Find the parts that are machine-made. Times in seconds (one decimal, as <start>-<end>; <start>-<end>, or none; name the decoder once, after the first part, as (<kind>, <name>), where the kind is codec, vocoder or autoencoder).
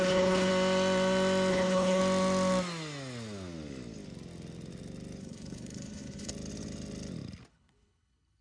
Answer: 0.0-0.5 (codec, HILCodec); 1.5-2.0; 5.2-6.3; 7.5-8.4